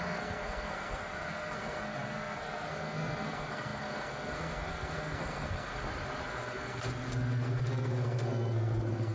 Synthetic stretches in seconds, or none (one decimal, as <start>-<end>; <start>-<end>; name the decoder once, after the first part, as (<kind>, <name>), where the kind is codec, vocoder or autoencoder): 0.0-5.7 (codec, SNAC); 6.3-9.1